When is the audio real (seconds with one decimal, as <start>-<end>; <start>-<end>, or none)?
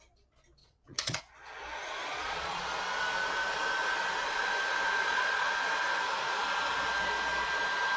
0.0-0.6; 1.2-2.0; 2.6-5.0; 5.5-8.0